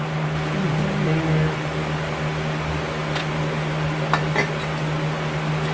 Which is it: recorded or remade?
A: recorded